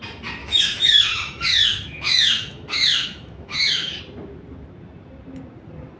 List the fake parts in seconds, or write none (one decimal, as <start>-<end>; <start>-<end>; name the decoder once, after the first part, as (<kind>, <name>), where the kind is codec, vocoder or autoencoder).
0.4-4.0 (autoencoder, DAC-VAE)